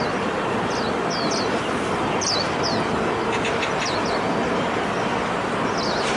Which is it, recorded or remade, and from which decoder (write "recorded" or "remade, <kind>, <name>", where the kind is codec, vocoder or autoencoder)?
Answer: recorded